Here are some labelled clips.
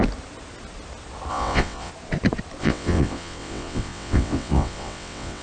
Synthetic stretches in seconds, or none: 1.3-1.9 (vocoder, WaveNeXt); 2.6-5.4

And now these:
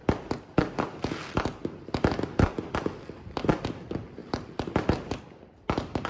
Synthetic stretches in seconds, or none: none

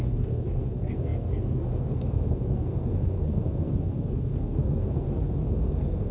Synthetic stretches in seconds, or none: 0.0-6.1 (codec, SNAC)